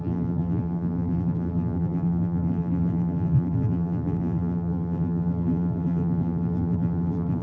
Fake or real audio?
fake